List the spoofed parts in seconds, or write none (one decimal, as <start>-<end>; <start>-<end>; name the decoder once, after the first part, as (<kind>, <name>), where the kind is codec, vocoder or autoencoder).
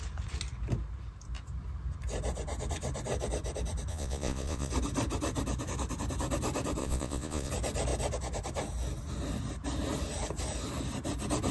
3.9-4.7 (vocoder, Vocos); 6.8-7.5